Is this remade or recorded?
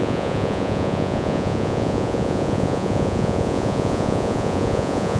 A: remade